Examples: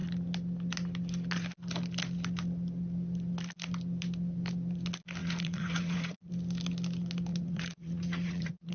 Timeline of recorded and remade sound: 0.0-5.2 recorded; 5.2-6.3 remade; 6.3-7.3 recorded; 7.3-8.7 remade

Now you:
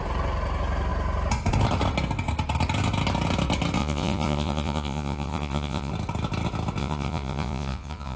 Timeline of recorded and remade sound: 0.0-3.8 recorded; 3.8-5.9 remade; 5.9-6.8 recorded; 6.8-8.2 remade

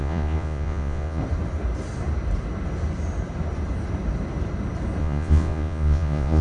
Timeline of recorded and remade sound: 0.0-1.2 remade; 1.2-5.0 recorded; 5.0-6.4 remade

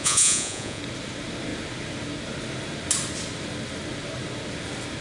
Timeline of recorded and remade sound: 0.0-0.8 remade; 0.8-5.0 recorded

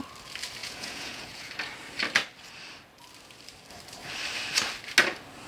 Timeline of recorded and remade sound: 0.0-0.6 recorded; 0.6-1.5 remade; 1.5-5.5 recorded